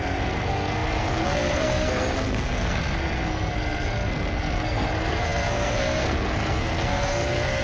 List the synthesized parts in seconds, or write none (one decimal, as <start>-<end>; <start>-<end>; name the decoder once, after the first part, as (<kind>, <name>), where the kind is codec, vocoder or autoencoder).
0.0-7.6 (codec, SNAC)